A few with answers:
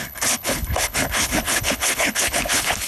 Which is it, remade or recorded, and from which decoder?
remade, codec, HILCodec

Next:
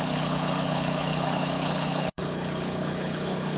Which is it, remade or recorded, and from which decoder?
remade, codec, HILCodec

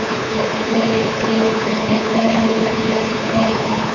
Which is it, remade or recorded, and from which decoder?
remade, codec, HILCodec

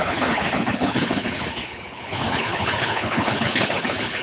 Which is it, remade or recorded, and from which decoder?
remade, codec, HILCodec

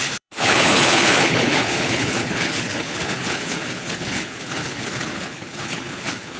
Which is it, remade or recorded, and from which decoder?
remade, codec, HILCodec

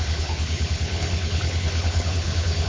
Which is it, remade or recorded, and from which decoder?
remade, codec, HILCodec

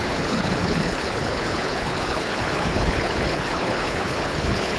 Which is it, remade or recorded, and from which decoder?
remade, codec, HILCodec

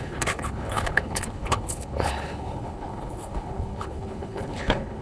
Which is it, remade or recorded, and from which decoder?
remade, codec, HILCodec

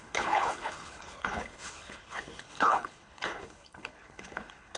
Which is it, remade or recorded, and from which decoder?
remade, codec, HILCodec